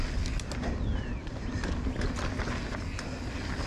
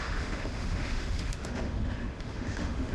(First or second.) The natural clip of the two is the first